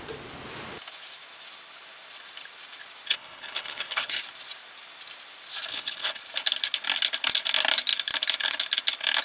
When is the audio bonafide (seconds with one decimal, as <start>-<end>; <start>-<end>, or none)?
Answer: 0.0-3.1; 4.2-5.7; 6.2-9.2